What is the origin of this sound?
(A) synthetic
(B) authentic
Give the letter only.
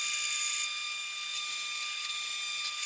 B